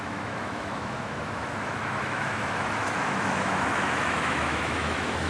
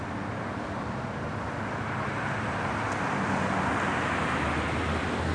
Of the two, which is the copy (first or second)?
first